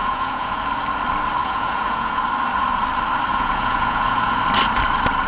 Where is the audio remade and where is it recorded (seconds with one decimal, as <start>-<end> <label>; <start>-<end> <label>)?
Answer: 0.0-0.6 remade; 0.6-1.4 recorded; 1.4-2.2 remade; 2.2-3.3 recorded; 3.3-4.4 remade; 4.4-5.3 recorded